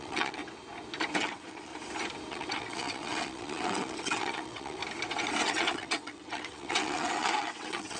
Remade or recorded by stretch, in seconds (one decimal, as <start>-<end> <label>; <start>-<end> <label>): 0.0-0.4 remade; 0.4-1.2 recorded; 1.2-1.7 remade; 1.7-2.3 recorded; 2.3-4.8 remade; 4.8-5.4 recorded; 5.4-8.0 remade